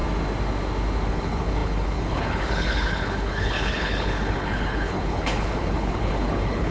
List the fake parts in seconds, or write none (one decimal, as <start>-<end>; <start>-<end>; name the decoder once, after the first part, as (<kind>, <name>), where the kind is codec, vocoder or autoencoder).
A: 1.1-6.7 (codec, HILCodec)